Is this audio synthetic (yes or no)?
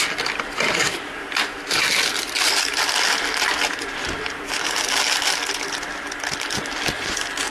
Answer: no